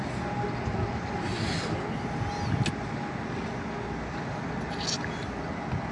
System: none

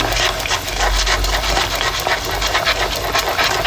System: none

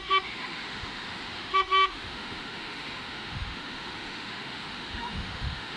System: autoencoder, DAC-VAE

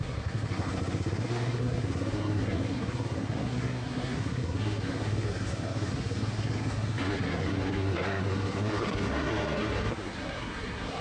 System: codec, SNAC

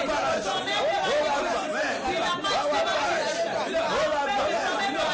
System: none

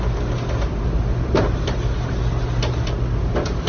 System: none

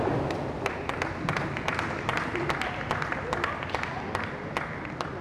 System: none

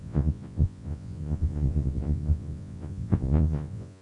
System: vocoder, Vocos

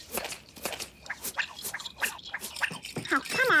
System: none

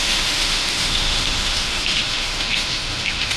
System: autoencoder, DAC-VAE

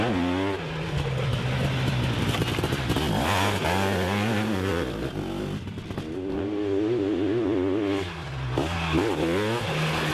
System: none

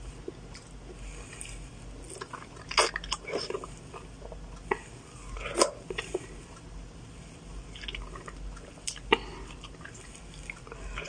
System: none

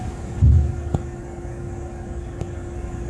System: codec, DAC